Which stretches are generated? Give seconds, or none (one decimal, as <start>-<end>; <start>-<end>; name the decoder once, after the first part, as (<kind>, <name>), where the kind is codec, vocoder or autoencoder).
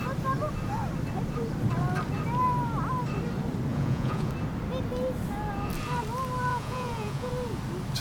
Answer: 3.7-4.3 (vocoder, Vocos); 6.5-7.3